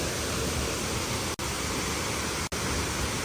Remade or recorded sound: recorded